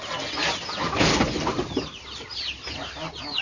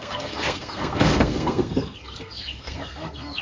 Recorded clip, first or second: first